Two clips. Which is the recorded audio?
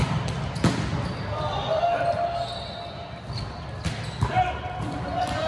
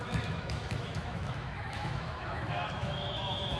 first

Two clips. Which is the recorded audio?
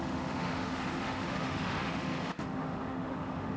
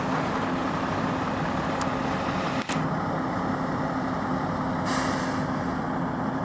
second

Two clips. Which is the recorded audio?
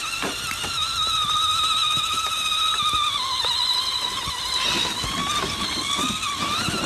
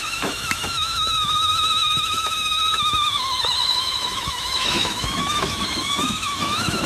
first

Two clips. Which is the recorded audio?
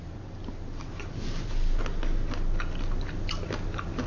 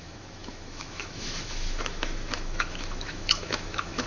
first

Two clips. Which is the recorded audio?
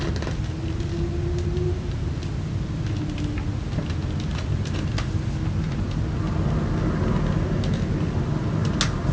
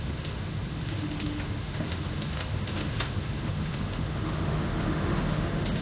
first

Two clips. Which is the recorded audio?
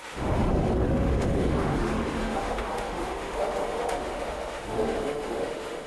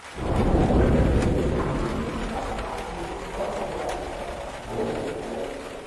second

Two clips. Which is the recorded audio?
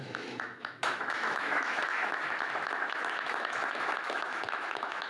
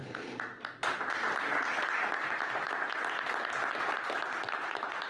second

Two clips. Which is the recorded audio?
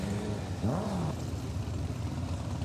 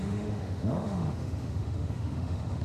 first